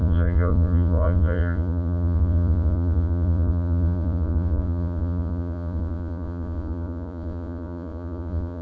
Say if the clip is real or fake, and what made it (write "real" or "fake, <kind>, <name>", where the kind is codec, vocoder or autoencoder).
fake, vocoder, Vocos